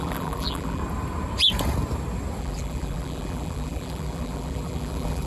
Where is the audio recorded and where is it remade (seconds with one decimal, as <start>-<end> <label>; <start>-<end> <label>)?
0.0-0.8 remade; 0.8-2.4 recorded; 2.4-5.3 remade